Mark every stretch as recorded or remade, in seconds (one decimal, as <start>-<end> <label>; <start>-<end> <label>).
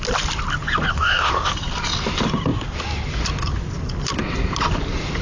0.0-0.9 recorded; 0.9-1.5 remade; 1.5-5.2 recorded